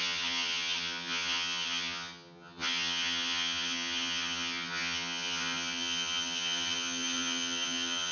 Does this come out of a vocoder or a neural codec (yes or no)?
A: yes